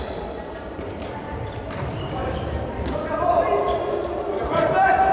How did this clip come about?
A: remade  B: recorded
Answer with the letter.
A